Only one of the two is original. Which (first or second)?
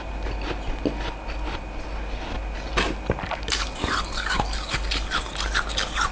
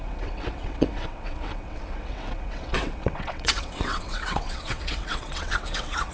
first